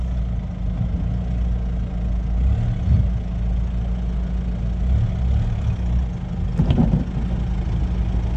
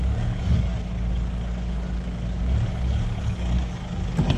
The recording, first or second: first